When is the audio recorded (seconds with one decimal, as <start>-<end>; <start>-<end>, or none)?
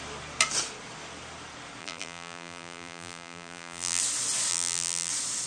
0.0-1.8; 4.0-4.5; 5.1-5.5